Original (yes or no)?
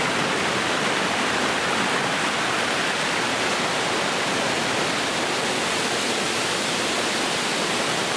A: yes